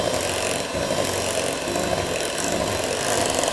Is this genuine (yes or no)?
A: yes